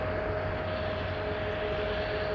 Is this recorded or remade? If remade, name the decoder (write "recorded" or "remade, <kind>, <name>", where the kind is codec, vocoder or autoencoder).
recorded